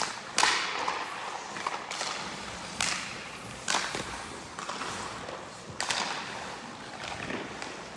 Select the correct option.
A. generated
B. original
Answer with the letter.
B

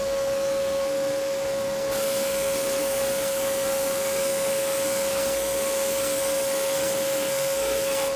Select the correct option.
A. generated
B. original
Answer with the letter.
A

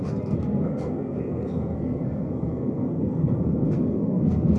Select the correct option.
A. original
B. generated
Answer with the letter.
B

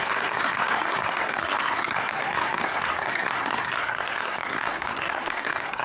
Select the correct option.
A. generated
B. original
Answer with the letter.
A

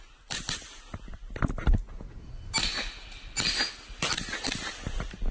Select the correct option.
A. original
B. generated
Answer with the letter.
A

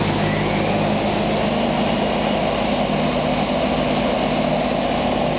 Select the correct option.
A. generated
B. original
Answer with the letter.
B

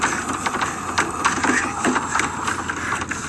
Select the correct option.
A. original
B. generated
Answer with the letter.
A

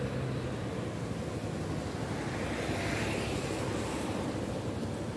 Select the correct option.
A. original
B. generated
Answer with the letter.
A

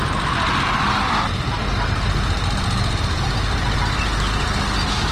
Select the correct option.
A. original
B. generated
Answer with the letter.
A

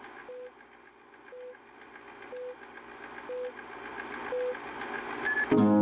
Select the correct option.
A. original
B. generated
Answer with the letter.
A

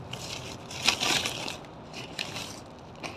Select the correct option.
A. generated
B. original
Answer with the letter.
A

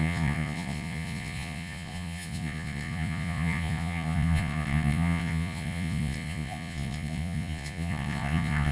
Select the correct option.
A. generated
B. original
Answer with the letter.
A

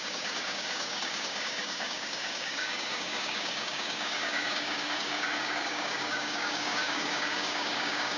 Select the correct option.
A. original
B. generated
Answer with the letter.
B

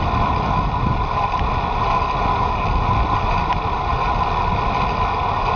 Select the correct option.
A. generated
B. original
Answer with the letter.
B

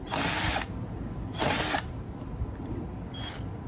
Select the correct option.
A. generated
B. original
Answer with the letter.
B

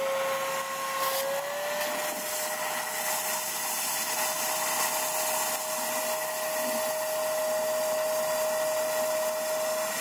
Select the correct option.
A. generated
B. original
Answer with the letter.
B